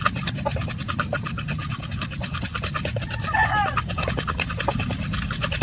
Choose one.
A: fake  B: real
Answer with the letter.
B